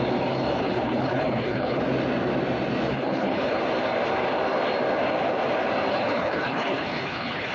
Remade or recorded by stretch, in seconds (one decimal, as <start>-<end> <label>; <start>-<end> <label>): 0.0-0.6 recorded; 0.6-1.8 remade; 1.8-2.9 recorded; 2.9-3.6 remade; 3.6-5.9 recorded; 5.9-7.5 remade